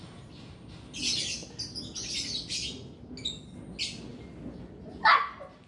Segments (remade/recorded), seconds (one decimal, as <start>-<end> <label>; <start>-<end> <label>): 0.0-5.7 recorded